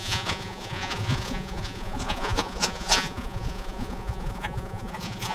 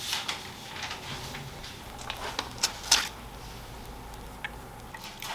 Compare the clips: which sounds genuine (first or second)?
second